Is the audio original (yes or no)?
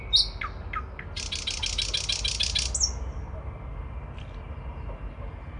yes